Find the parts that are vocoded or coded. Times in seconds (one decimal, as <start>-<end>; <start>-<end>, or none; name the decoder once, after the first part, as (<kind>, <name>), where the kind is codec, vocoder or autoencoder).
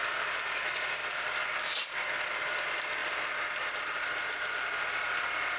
none